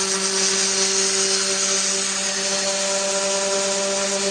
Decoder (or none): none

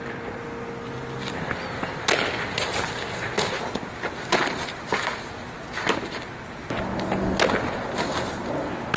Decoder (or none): none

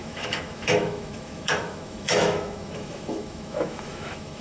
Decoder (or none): autoencoder, DAC-VAE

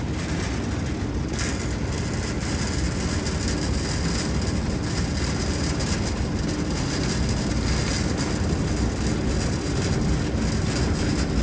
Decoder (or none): none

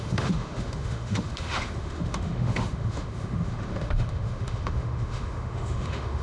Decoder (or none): autoencoder, DAC-VAE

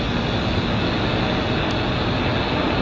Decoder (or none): none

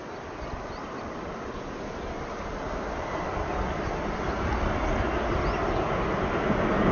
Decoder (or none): none